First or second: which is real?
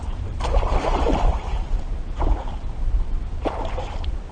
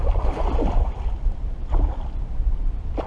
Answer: second